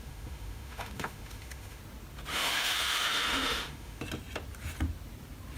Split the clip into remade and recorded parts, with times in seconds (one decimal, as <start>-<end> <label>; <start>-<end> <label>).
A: 0.0-1.8 remade; 1.8-2.3 recorded; 2.3-4.0 remade; 4.0-5.6 recorded